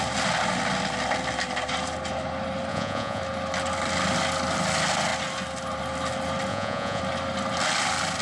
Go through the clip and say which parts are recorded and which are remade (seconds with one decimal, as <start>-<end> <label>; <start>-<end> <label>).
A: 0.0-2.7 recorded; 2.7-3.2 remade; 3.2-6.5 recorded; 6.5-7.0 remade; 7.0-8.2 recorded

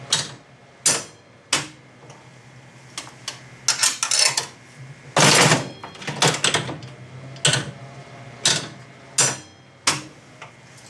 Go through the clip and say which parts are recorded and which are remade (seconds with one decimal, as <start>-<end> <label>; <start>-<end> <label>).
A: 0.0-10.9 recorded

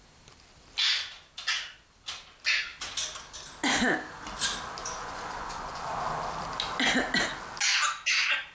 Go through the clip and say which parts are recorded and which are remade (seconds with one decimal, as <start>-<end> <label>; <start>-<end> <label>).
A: 0.0-4.8 recorded; 4.8-5.8 remade; 5.8-8.5 recorded

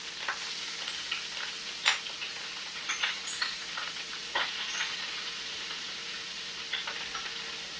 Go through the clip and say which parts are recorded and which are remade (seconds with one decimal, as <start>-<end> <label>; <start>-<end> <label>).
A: 0.0-2.2 recorded; 2.2-6.5 remade; 6.5-7.8 recorded

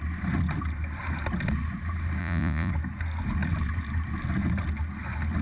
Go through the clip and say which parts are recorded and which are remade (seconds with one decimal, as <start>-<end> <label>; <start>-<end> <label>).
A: 0.0-2.2 recorded; 2.2-2.7 remade; 2.7-5.4 recorded

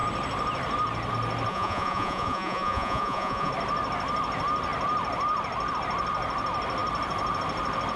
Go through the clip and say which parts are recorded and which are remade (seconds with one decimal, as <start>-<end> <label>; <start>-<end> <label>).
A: 0.0-1.5 recorded; 1.5-3.5 remade; 3.5-8.0 recorded